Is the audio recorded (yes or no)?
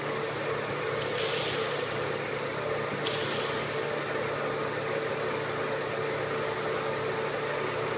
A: yes